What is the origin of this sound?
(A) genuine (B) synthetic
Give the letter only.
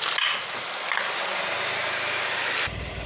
A